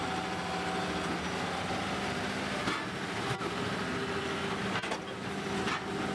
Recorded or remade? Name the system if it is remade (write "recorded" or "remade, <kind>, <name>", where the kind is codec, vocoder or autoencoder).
recorded